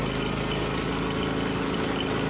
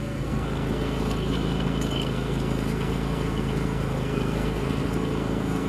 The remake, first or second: second